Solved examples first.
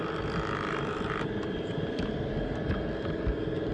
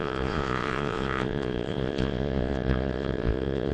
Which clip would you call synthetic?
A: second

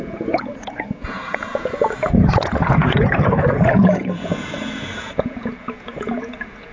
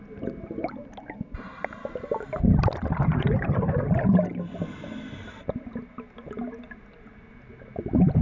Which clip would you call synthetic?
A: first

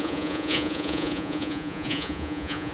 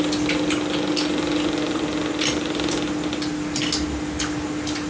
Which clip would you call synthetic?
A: first